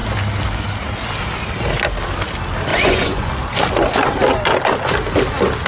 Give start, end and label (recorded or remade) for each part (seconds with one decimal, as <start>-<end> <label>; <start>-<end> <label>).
0.0-2.7 recorded; 2.7-3.3 remade; 3.3-5.7 recorded